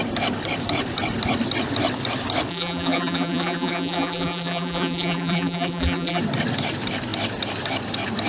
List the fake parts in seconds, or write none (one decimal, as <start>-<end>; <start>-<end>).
2.5-6.2